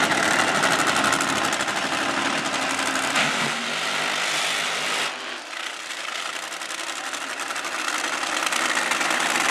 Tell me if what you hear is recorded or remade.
recorded